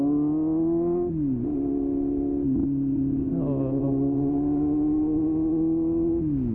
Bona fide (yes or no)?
yes